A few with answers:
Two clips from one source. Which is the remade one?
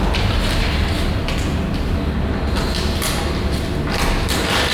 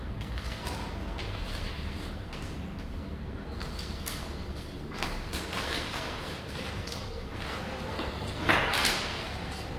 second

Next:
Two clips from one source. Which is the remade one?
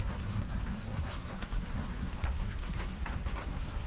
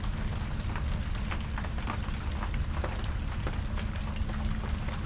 first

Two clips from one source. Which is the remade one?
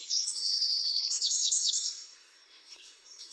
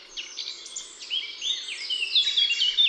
first